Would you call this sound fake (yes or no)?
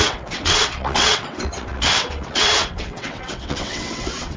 yes